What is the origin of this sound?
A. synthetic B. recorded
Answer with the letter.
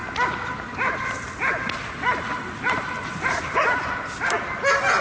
B